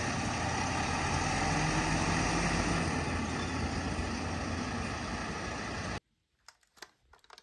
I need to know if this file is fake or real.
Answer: real